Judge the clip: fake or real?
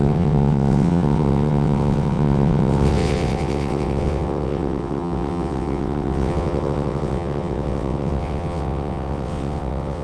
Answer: fake